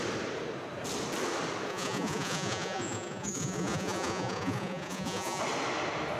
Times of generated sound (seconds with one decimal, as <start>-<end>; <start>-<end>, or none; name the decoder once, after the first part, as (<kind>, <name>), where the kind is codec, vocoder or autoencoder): 1.7-5.4 (vocoder, Vocos)